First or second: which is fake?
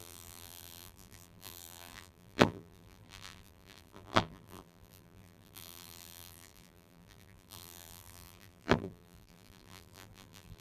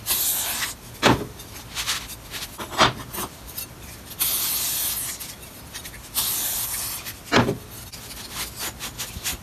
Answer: first